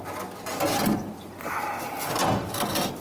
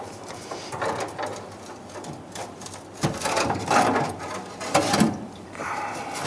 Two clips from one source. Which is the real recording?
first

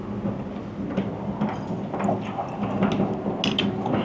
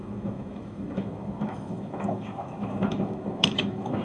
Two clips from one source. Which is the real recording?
first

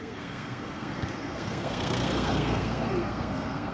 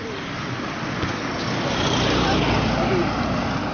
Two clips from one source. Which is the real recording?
second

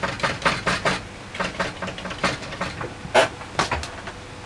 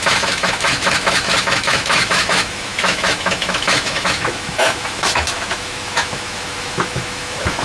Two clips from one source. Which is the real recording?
first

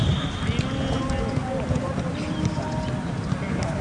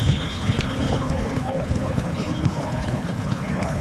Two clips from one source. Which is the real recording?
first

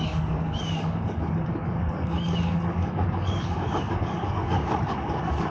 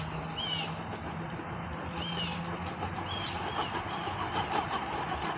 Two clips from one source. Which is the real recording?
second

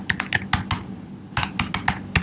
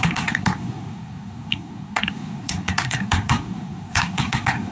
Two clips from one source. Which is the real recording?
first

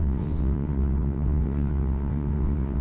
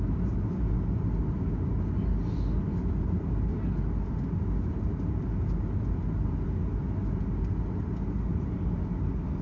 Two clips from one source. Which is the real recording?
second